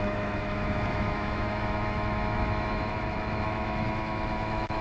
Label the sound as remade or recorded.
remade